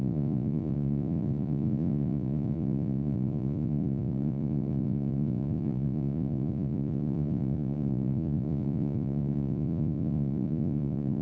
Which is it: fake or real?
fake